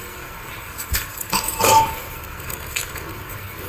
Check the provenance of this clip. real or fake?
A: fake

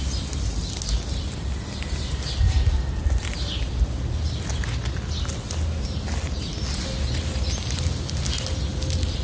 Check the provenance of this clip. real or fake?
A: real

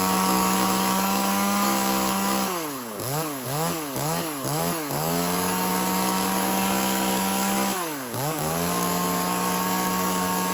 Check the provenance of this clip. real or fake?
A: fake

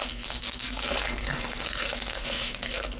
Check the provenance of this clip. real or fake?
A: fake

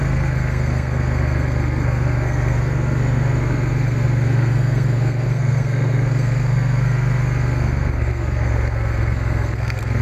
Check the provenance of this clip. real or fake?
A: fake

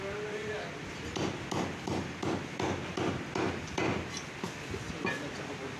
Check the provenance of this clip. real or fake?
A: real